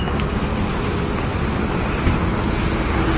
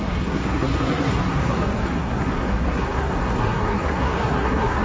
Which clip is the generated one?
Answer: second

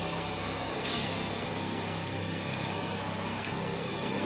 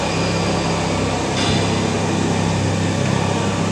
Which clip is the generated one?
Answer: first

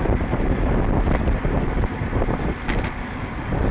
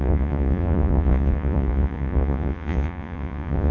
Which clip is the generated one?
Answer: second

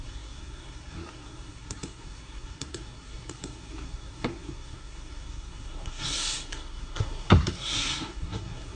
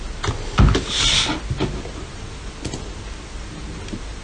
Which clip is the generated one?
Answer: first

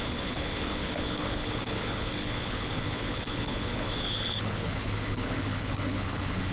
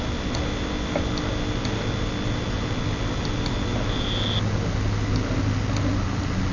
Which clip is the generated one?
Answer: first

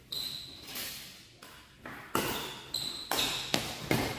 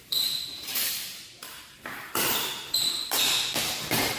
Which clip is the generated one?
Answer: second